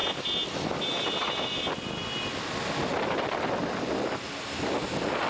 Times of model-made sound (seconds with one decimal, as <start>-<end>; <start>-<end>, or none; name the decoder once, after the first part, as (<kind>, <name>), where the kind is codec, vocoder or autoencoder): none